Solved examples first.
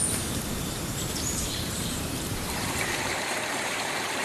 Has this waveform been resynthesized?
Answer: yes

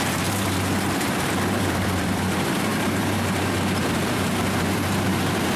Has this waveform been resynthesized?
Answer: yes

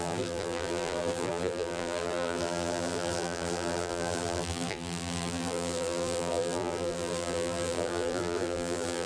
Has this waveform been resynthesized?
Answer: yes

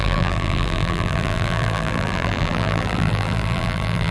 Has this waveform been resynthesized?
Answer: yes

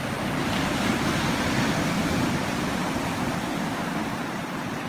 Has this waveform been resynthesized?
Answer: no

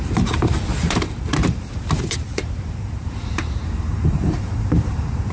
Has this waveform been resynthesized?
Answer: yes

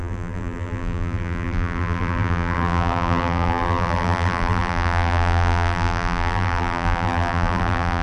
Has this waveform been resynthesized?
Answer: yes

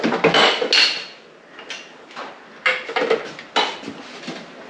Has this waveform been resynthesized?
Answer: no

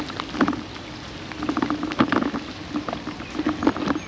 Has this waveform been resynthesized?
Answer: no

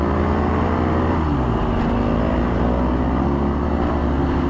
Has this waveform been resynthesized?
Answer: no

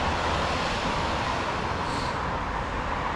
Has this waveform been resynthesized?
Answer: no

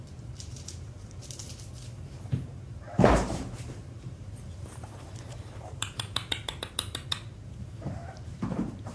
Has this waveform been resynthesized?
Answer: yes